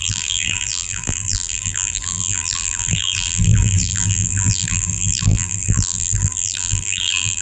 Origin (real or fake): fake